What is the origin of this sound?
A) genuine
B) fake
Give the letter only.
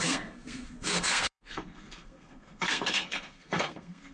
B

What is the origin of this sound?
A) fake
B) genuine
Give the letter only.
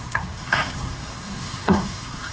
A